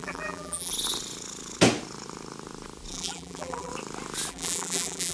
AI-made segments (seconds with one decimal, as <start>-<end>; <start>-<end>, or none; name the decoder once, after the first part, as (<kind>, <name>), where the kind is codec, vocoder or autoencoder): 0.0-0.7 (vocoder, BigVGAN v2); 2.9-3.7; 4.3-5.1